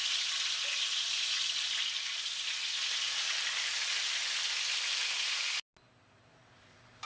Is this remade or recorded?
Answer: recorded